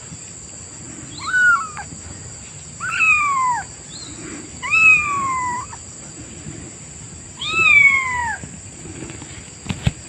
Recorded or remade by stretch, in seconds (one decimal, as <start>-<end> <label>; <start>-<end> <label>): 0.0-10.1 recorded